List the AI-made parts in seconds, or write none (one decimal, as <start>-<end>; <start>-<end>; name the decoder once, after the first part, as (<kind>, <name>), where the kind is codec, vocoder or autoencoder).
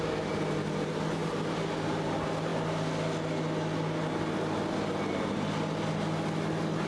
none